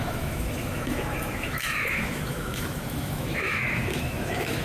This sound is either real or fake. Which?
fake